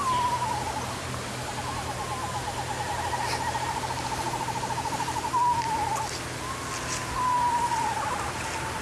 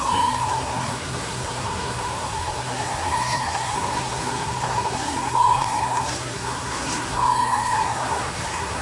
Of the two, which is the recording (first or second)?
first